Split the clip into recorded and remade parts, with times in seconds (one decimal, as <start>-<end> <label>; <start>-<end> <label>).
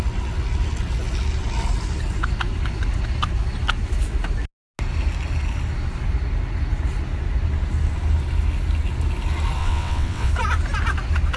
0.0-9.6 recorded; 9.6-10.3 remade; 10.3-11.4 recorded